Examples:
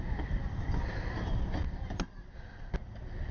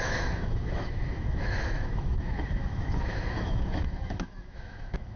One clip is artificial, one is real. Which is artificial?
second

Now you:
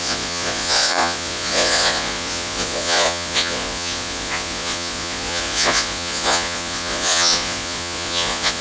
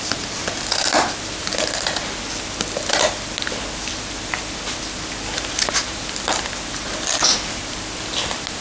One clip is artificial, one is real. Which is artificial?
first